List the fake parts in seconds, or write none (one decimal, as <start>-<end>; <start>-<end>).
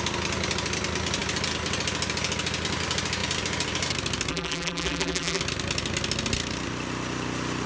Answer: 4.3-5.4